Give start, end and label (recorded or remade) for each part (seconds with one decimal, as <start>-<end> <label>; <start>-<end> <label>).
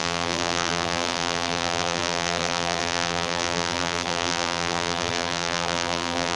0.0-6.4 remade